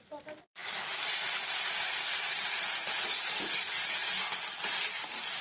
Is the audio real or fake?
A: real